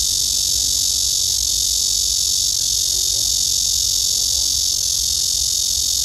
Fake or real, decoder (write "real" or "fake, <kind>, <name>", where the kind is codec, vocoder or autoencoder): real